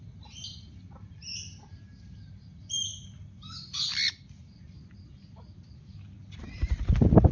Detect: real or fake real